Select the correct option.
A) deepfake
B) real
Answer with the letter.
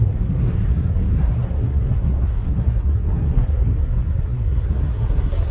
A